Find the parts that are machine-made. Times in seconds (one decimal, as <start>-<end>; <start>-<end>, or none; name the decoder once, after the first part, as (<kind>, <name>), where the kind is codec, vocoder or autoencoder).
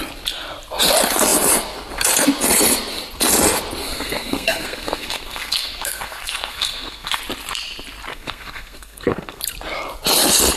3.8-7.2 (codec, SNAC); 8.1-9.4